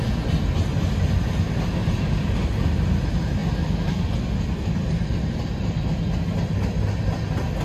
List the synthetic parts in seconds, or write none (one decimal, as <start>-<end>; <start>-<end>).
1.8-2.6